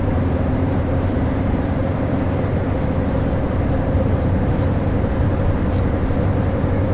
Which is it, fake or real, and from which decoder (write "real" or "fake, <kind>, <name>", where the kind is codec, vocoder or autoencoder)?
fake, vocoder, BigVGAN v2